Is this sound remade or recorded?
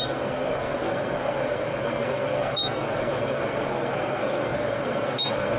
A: remade